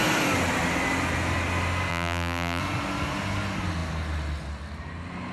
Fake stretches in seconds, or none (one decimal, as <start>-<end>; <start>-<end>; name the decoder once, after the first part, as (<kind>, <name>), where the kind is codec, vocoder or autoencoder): 1.9-2.6 (vocoder, BigVGAN v2)